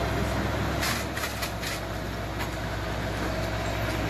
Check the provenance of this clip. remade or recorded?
recorded